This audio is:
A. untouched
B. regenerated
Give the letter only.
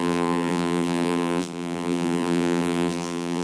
B